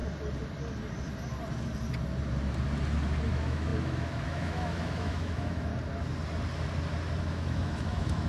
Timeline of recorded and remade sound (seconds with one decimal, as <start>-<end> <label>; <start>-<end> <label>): 0.0-3.3 recorded; 3.3-5.7 remade; 5.7-7.2 recorded; 7.2-8.3 remade